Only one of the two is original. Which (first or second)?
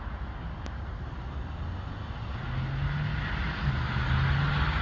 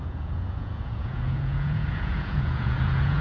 first